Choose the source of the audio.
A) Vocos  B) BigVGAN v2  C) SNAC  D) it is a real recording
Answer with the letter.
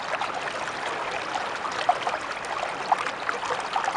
D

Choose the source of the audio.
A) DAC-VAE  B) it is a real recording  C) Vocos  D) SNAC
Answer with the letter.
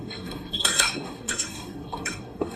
D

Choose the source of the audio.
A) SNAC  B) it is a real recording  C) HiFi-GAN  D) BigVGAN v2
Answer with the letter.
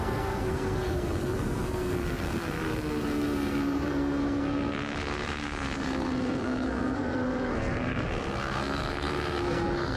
A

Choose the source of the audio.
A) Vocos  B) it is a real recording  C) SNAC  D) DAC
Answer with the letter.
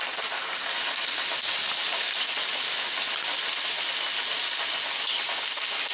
B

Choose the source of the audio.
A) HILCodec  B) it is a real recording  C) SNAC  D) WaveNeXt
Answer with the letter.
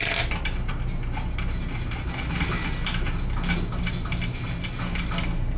B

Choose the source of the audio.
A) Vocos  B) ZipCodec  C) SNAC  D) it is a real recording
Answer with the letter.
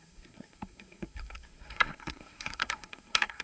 C